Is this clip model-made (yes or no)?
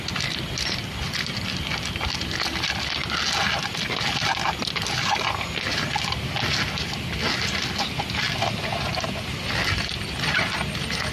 no